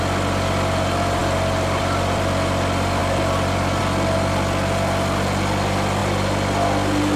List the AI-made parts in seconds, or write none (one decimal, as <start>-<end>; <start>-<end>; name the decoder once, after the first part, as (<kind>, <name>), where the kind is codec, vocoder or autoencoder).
none

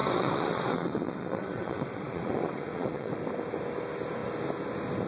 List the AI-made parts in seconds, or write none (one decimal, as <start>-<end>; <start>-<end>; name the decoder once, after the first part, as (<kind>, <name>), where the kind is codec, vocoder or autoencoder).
0.0-3.1 (vocoder, WaveNeXt)

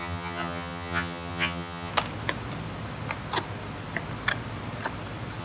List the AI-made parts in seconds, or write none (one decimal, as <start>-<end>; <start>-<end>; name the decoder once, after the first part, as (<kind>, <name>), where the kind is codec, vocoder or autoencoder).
0.0-1.9 (vocoder, HiFi-GAN)

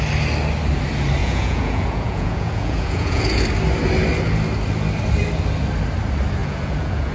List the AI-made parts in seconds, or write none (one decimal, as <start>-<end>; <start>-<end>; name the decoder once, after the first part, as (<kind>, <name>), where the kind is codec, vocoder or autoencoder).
1.2-3.4 (vocoder, Vocos); 6.4-7.1

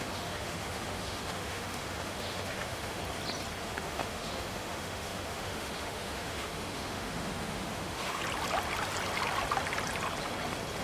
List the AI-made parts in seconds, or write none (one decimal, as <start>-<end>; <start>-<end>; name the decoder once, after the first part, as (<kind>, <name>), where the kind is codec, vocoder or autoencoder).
0.0-3.0 (autoencoder, DAC-VAE); 3.6-8.2

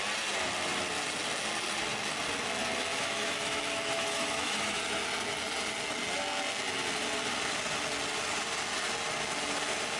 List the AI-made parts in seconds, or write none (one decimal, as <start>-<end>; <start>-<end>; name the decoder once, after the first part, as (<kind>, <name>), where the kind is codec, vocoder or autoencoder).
2.9-4.8 (autoencoder, DAC-VAE)